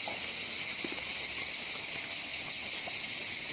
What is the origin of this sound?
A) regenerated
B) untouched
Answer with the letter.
B